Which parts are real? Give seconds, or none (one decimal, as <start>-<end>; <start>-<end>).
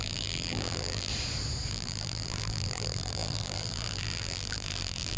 1.1-1.7